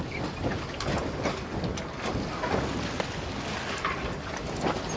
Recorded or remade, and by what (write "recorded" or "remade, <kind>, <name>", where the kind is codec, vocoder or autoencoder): recorded